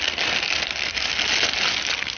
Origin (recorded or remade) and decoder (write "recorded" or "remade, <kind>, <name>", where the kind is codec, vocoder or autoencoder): recorded